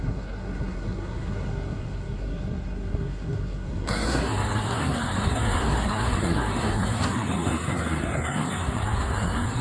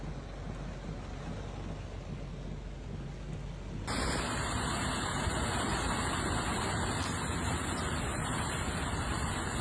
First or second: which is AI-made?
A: first